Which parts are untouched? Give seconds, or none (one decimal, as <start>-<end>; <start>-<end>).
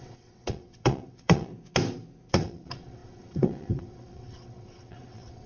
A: 1.5-2.3